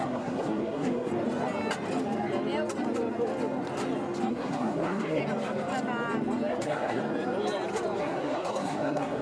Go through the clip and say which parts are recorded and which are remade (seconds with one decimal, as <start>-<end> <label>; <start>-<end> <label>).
0.0-1.1 remade; 1.1-4.3 recorded; 4.3-5.2 remade; 5.2-6.5 recorded; 6.5-7.0 remade; 7.0-8.0 recorded; 8.0-9.2 remade